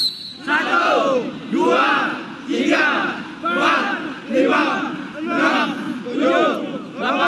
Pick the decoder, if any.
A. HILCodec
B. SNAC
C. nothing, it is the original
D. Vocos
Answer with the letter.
C